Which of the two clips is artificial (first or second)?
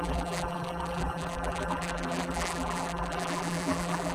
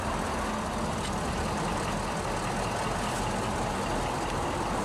first